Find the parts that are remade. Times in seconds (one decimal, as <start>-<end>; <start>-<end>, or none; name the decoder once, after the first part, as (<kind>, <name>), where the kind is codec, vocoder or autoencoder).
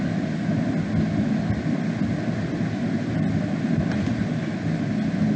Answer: none